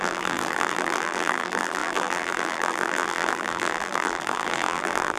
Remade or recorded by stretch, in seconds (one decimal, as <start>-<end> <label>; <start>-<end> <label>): 0.0-5.2 remade